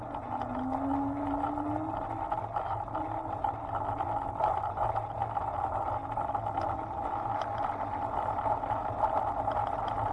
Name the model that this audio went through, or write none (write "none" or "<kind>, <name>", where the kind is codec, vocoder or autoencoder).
none